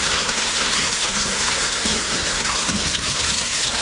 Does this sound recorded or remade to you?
remade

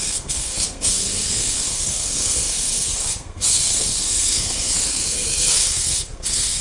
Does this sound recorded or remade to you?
remade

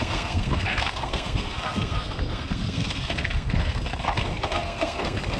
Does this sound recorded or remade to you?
remade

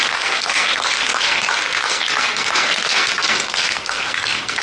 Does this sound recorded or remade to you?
remade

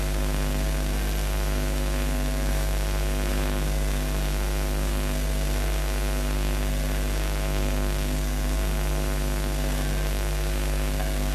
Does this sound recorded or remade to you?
remade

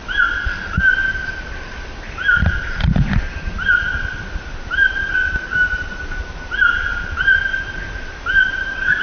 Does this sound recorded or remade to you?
recorded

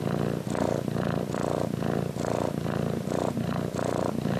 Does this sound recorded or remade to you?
recorded